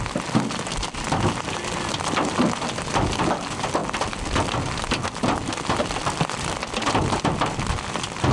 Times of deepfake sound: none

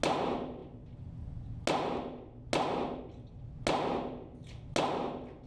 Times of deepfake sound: none

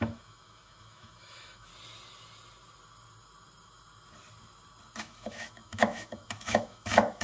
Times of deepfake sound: 0.0-1.7 (autoencoder, DAC-VAE); 5.0-7.2

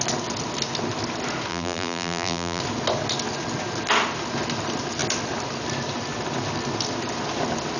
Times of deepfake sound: 1.5-2.6 (vocoder, BigVGAN v2)

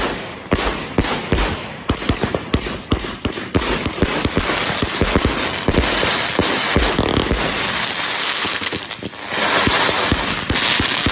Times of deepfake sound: 8.2-8.8 (codec, SNAC)

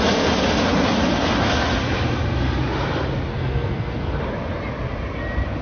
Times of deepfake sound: 3.3-4.2 (codec, SNAC)

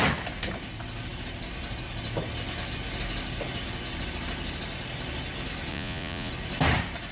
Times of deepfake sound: 5.7-6.3 (vocoder, Vocos)